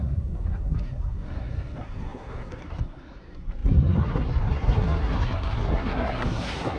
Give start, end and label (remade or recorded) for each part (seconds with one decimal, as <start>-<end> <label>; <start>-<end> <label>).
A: 0.0-6.8 remade